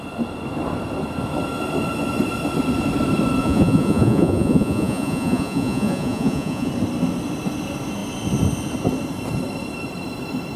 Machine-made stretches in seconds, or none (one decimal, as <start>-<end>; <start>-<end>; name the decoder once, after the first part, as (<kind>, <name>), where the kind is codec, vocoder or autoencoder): 3.4-6.7 (vocoder, Vocos)